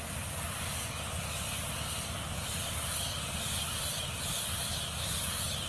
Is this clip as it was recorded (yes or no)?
yes